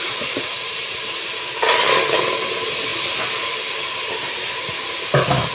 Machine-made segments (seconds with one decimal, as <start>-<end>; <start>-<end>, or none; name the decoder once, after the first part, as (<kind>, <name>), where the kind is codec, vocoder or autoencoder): none